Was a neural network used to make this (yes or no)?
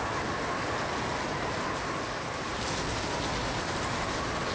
no